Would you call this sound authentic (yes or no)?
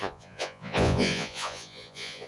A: no